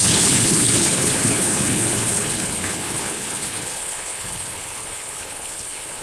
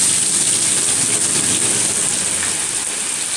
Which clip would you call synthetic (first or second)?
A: first